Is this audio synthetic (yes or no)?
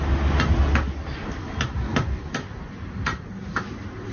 no